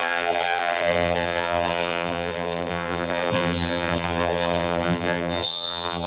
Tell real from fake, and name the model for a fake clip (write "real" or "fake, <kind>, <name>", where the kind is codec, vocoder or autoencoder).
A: fake, vocoder, BigVGAN v2